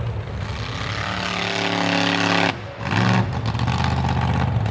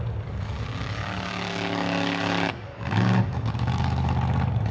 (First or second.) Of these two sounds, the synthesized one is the second